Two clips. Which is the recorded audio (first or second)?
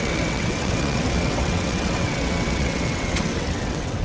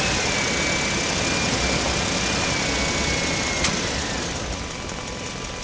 second